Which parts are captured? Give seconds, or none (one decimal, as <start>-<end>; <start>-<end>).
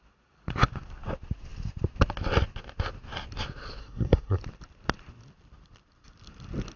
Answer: 0.0-3.8; 4.4-6.8